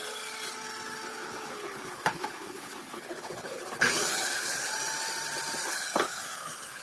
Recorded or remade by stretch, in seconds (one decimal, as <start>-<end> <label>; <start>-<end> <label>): 0.0-1.1 recorded; 1.1-4.7 remade; 4.7-5.6 recorded; 5.6-6.8 remade